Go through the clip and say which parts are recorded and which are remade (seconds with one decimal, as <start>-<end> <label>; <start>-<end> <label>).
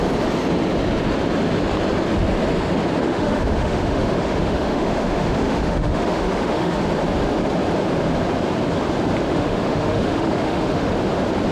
0.0-3.0 recorded; 3.0-6.8 remade; 6.8-9.3 recorded; 9.3-10.9 remade; 10.9-11.5 recorded